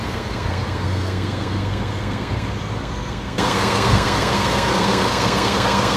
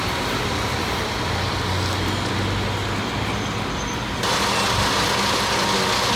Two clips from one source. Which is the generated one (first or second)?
first